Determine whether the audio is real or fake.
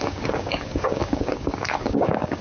fake